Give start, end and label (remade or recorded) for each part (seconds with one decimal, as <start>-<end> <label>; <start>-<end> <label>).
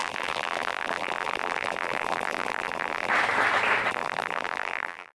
0.0-3.1 remade; 3.1-3.9 recorded; 3.9-5.2 remade